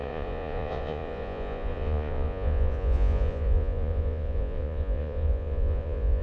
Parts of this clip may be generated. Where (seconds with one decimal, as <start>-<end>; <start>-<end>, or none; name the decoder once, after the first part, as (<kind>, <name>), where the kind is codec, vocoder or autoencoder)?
0.0-6.2 (vocoder, Vocos)